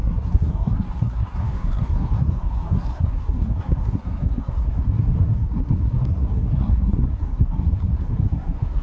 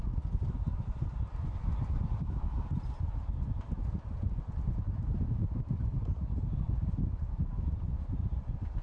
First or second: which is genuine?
second